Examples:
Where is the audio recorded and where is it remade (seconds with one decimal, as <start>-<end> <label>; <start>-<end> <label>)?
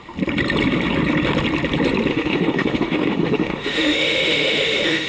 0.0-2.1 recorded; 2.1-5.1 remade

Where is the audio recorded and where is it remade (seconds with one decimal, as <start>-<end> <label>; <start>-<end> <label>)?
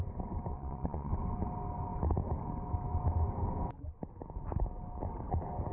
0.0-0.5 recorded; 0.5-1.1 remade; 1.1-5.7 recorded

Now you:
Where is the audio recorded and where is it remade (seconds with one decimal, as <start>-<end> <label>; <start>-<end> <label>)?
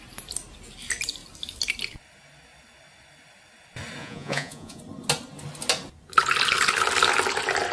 0.0-4.0 recorded; 4.0-4.8 remade; 4.8-7.7 recorded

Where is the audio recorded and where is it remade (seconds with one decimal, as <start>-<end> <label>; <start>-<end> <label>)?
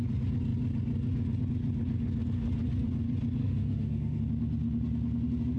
0.0-3.4 recorded; 3.4-4.2 remade; 4.2-5.6 recorded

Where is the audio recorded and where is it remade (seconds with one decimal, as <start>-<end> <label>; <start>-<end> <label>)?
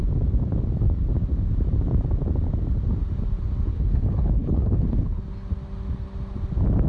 0.0-3.7 recorded; 3.7-5.2 remade; 5.2-6.9 recorded